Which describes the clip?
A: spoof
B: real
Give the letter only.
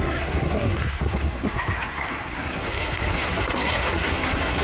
A